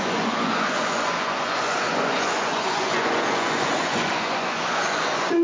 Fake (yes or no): yes